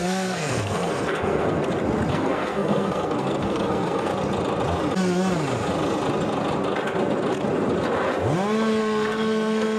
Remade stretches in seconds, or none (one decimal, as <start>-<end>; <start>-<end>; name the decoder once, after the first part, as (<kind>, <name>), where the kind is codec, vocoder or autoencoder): 0.0-1.6 (codec, SNAC); 2.1-4.1; 8.8-9.8